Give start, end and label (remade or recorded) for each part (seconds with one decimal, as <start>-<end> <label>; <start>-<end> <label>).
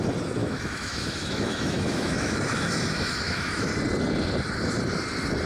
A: 0.0-0.4 recorded; 0.4-3.7 remade; 3.7-5.5 recorded